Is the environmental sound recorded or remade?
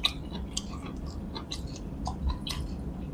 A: remade